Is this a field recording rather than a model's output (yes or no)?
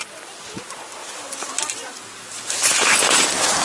yes